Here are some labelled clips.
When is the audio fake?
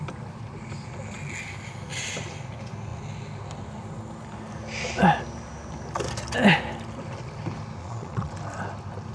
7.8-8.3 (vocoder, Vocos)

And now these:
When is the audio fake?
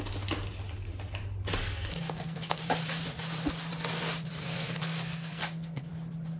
1.6-2.6 (codec, SNAC); 4.4-5.9